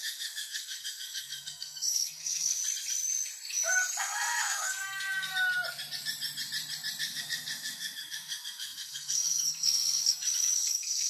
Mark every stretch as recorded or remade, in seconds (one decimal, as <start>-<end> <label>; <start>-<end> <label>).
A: 0.0-2.6 remade; 2.6-4.0 recorded; 4.0-5.3 remade; 5.3-7.0 recorded; 7.0-11.1 remade